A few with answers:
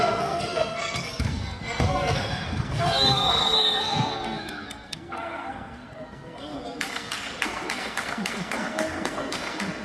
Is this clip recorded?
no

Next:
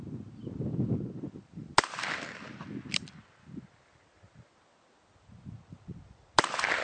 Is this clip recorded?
yes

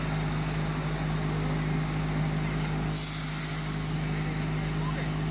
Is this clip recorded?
yes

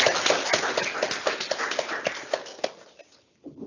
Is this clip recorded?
yes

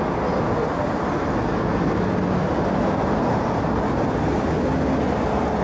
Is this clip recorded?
yes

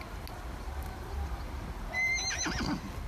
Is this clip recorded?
yes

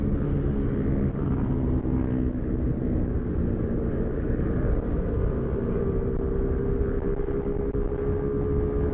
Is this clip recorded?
yes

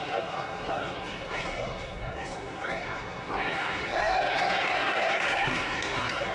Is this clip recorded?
no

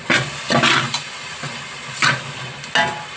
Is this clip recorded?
yes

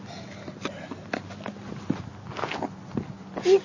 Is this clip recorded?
yes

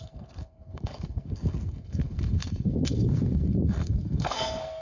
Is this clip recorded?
no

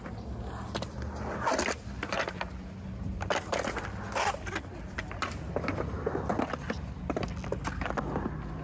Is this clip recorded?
yes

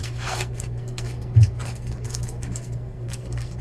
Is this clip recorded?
no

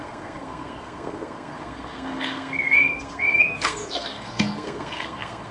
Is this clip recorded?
no